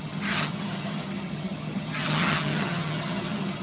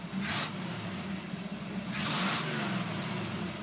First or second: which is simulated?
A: first